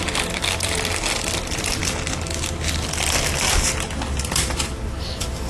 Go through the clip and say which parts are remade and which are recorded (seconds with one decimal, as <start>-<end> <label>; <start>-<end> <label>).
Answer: 0.0-1.8 remade; 1.8-4.3 recorded; 4.3-5.5 remade